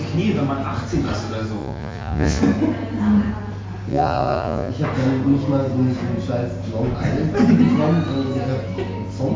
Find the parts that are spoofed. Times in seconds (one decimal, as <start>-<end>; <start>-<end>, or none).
1.6-2.4; 3.9-4.7